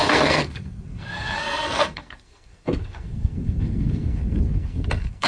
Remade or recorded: remade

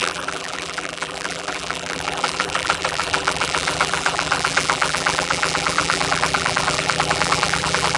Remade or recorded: remade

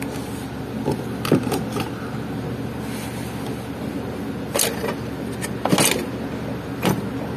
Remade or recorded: recorded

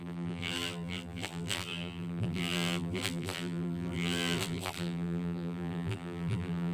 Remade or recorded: remade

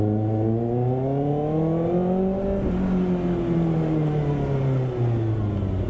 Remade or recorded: recorded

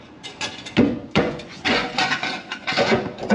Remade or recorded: remade